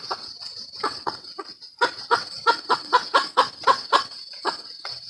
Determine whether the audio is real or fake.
fake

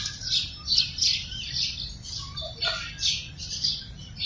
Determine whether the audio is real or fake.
real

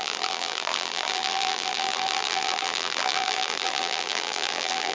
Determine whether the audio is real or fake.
fake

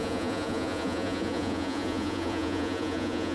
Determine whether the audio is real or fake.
fake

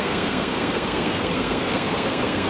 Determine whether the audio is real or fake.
fake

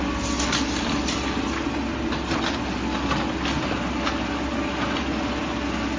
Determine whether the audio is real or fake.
real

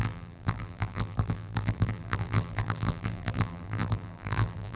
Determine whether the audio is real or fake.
fake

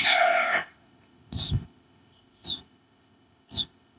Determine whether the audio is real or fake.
fake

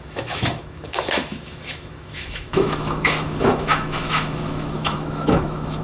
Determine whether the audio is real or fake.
fake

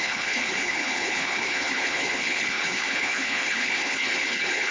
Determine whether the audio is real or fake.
fake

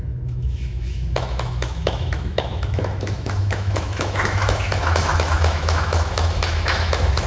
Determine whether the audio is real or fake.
fake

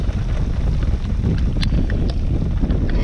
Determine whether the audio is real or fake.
real